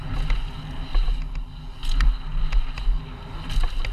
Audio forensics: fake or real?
real